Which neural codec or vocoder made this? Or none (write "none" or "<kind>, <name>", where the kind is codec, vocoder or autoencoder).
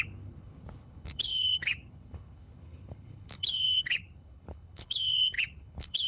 codec, HILCodec